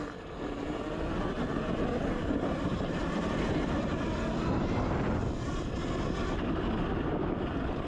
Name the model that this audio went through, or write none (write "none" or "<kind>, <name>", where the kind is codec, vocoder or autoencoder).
none